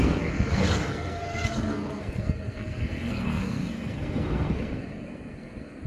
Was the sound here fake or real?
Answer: fake